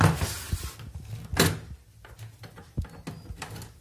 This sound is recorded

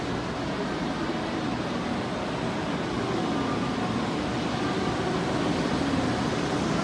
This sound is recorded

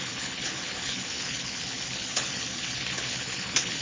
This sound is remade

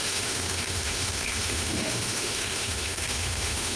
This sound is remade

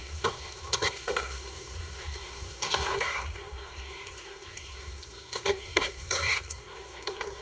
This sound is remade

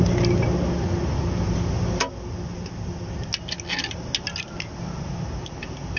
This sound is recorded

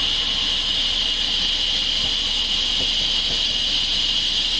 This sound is recorded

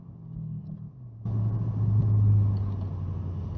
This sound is recorded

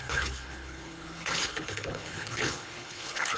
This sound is remade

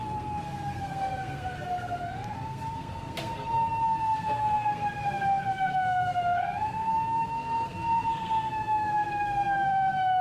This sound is remade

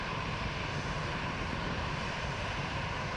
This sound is remade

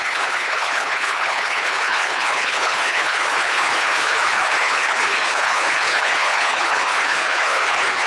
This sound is remade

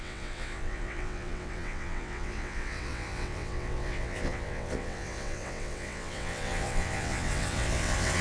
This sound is remade